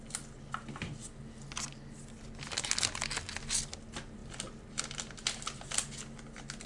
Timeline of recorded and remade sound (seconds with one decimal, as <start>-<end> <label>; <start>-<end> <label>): 0.0-6.7 recorded